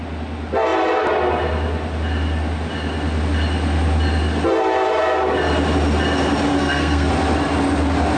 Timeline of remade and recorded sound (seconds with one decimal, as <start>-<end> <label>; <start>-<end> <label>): 0.0-6.5 recorded; 6.5-7.1 remade; 7.1-8.2 recorded